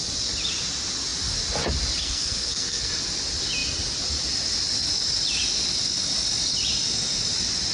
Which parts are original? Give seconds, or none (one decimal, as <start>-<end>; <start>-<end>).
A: 0.0-2.0; 2.9-7.7